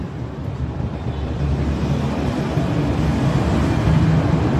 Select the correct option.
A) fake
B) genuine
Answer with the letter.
B